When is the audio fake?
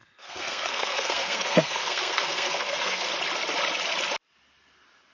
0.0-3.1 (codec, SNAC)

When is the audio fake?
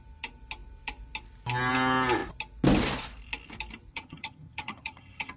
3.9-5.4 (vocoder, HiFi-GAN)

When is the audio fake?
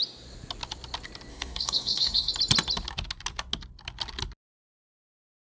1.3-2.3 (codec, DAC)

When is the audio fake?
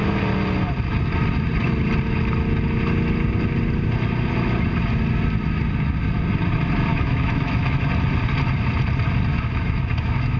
6.9-7.8 (autoencoder, DAC-VAE); 9.3-10.4